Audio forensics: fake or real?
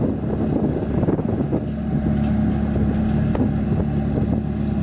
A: real